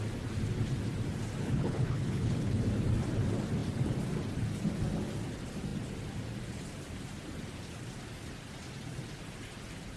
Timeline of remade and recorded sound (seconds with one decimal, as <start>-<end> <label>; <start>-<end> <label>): 0.0-1.4 recorded; 1.4-2.6 remade; 2.6-10.0 recorded